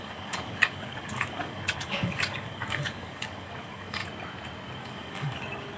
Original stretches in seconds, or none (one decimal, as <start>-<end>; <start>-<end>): 4.0-4.8